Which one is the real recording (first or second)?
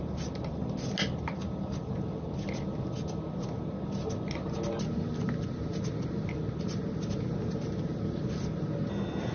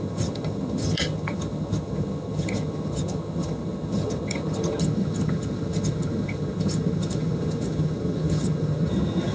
first